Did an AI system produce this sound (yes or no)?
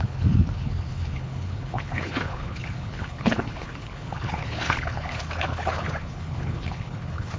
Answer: yes